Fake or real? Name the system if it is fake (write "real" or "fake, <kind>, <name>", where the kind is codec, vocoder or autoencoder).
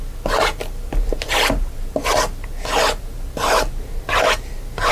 real